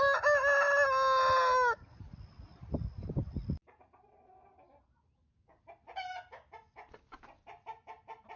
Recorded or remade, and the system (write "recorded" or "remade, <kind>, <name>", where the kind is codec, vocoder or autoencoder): recorded